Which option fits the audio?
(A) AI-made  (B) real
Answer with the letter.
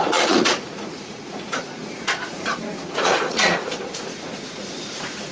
A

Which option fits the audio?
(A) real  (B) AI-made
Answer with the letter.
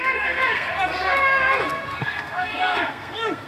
B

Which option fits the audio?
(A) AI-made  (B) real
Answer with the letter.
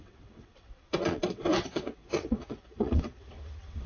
A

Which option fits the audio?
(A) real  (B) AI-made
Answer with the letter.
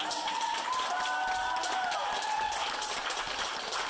A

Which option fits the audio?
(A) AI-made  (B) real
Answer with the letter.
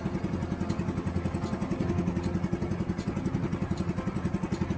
B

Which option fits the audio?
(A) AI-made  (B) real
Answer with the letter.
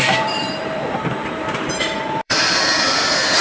A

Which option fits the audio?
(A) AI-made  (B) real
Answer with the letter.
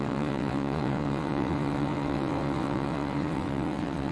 A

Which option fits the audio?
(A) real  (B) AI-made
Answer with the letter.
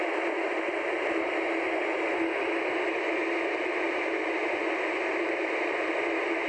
A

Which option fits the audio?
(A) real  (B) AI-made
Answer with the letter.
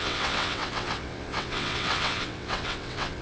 B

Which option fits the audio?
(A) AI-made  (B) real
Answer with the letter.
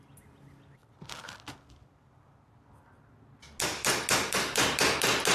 B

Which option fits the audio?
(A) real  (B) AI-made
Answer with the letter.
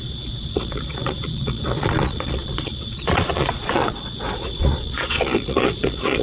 B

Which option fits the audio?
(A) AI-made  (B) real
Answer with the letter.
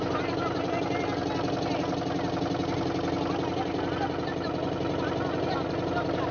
B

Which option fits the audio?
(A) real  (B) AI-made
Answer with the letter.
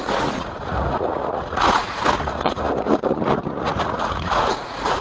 B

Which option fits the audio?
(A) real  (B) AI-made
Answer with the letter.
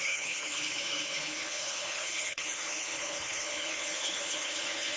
B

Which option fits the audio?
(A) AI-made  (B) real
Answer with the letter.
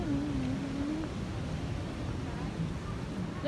B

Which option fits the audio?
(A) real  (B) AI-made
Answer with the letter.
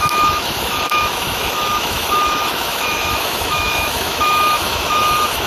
B